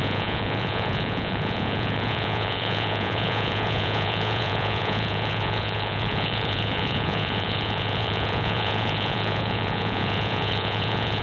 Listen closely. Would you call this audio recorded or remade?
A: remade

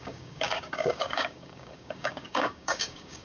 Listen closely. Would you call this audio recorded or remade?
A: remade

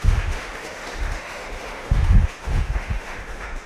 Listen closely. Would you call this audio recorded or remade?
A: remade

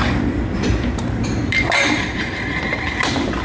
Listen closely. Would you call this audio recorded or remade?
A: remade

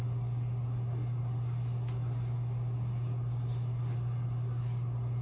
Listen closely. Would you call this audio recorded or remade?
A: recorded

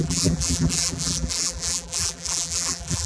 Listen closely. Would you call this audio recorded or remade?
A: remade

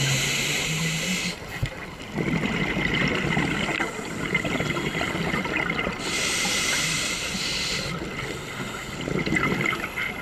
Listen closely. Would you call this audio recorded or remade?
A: recorded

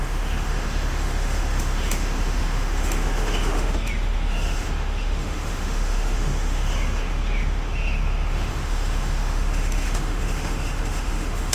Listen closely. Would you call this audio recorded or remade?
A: remade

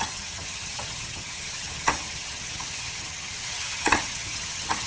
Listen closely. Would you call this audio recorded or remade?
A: remade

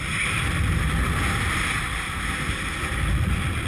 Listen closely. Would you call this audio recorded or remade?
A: recorded